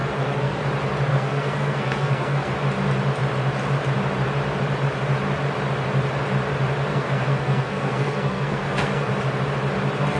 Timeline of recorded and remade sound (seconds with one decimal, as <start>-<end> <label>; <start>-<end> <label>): 0.0-0.6 remade; 0.6-1.1 recorded; 1.1-2.5 remade; 2.5-6.9 recorded; 6.9-9.1 remade; 9.1-10.2 recorded